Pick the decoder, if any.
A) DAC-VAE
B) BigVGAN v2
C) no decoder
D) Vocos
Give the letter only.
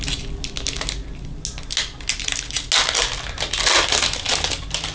C